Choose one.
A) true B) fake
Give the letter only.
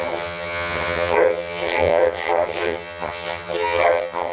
B